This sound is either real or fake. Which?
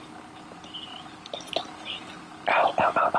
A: real